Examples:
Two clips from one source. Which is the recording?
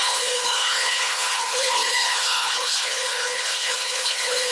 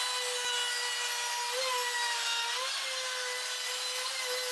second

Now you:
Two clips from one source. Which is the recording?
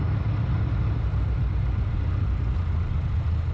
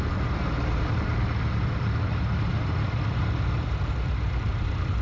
first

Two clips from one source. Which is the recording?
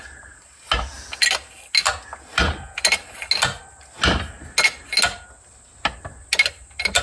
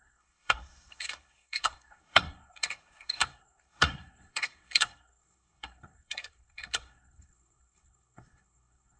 first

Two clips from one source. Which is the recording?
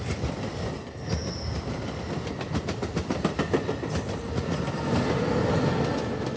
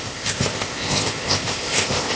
first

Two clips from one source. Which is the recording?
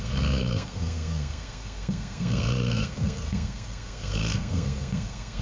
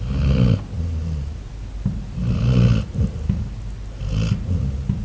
second